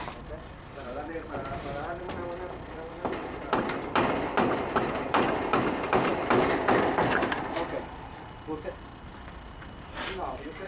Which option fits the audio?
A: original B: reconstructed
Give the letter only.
B